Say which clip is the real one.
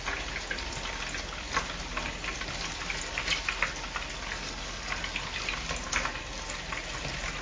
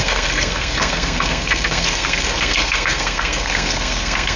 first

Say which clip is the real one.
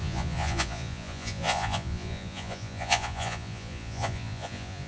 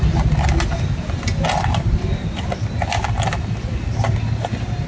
second